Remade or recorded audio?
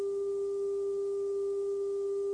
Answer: recorded